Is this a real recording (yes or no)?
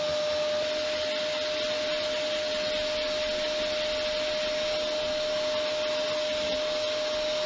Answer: yes